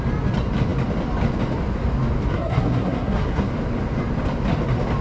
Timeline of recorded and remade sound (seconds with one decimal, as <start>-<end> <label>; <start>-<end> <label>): 0.0-2.3 recorded; 2.3-3.5 remade; 3.5-5.0 recorded